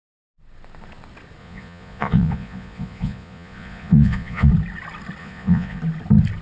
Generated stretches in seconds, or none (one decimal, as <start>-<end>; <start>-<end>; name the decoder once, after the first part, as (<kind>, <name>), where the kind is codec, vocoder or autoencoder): 1.4-4.5 (vocoder, Vocos); 5.2-5.8